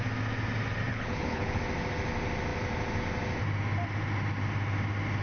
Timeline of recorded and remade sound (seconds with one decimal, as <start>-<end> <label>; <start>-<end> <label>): 0.0-0.9 recorded; 0.9-1.6 remade; 1.6-5.2 recorded